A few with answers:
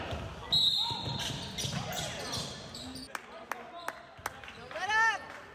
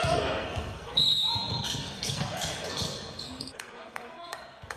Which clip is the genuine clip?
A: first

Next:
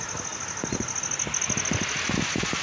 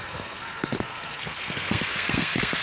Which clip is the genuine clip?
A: first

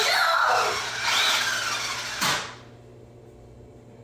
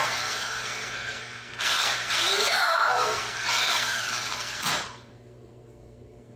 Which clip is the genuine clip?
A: first